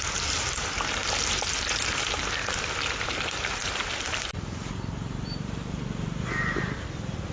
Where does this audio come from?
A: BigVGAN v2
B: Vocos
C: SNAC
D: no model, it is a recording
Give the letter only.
A